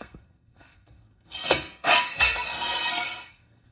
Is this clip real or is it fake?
fake